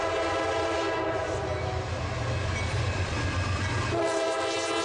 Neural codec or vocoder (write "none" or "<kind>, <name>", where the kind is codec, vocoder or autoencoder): none